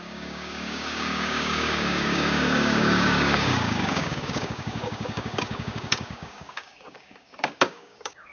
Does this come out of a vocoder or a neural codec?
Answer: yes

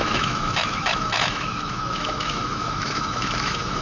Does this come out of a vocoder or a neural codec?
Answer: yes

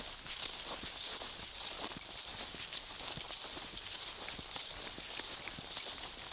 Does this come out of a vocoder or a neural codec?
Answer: no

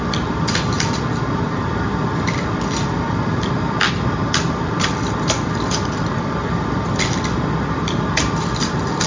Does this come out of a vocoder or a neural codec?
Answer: no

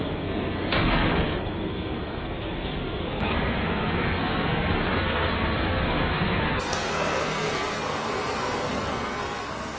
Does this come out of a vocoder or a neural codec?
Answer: yes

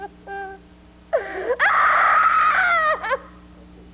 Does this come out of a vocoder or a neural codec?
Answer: no